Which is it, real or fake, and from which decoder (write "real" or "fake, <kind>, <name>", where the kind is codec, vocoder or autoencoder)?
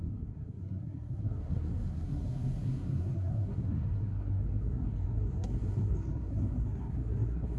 fake, codec, SNAC